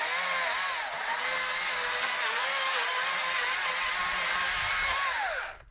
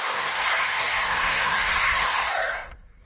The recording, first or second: first